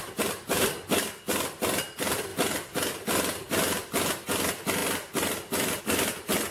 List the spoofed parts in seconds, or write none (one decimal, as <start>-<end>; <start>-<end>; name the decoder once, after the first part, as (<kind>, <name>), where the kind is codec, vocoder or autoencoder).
none